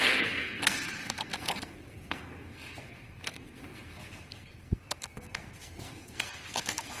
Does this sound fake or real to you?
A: fake